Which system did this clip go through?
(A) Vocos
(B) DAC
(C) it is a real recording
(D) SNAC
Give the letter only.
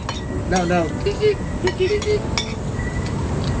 C